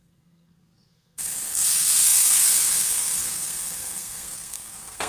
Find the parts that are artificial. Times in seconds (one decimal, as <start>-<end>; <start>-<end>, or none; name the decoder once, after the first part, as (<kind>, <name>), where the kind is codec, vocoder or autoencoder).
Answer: 0.0-5.1 (codec, SNAC)